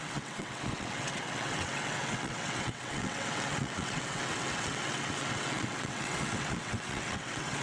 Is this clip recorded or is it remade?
remade